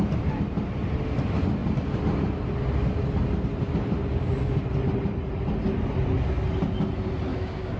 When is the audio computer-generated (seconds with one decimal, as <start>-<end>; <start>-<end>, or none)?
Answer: 7.3-7.8